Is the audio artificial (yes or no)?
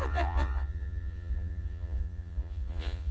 yes